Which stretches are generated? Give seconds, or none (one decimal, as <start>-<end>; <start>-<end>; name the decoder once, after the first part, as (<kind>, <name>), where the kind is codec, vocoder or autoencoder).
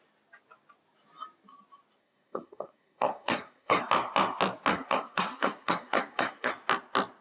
2.0-3.8 (codec, SNAC); 4.7-6.5